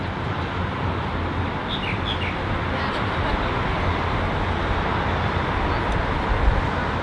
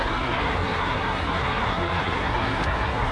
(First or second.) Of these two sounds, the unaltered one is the first